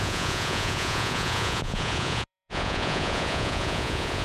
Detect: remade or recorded remade